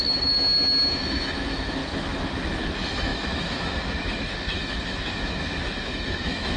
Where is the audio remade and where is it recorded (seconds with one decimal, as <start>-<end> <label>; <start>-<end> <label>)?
0.0-6.6 remade